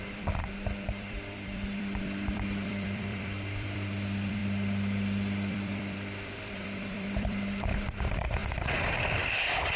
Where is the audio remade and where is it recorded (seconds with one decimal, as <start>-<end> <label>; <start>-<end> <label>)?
0.0-8.4 remade; 8.4-9.0 recorded; 9.0-9.8 remade